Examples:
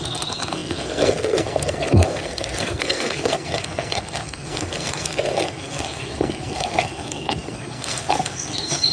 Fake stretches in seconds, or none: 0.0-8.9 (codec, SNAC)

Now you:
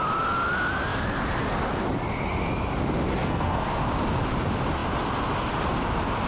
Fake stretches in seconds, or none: 3.2-3.8 (codec, SNAC)

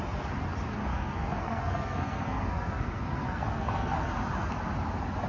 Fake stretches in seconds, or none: 0.9-4.1 (codec, SNAC)

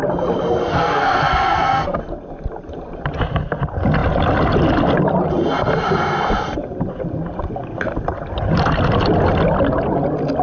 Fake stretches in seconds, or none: 0.7-2.0 (codec, SNAC)

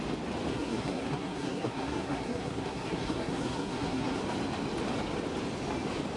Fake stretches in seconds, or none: 0.5-4.2 (codec, SNAC)